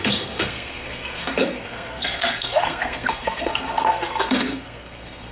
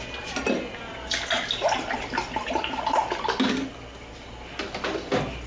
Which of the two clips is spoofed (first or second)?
first